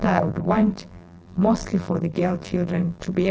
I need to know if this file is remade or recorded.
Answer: remade